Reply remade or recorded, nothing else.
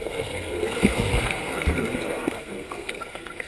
remade